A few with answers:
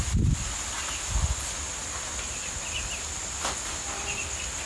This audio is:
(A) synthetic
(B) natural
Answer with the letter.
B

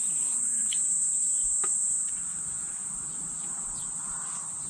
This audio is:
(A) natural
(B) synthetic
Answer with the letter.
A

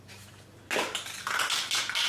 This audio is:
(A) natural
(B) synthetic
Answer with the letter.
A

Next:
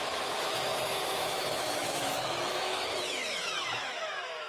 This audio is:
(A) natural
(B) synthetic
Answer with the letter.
B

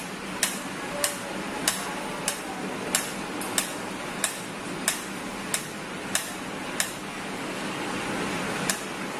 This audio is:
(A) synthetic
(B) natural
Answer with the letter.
B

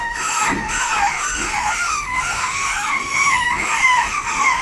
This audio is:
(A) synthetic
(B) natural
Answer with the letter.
A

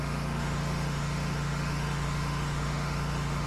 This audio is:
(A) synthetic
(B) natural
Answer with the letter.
A